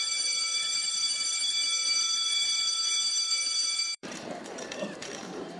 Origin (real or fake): fake